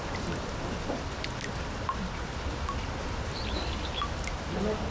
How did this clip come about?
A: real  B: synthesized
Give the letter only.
A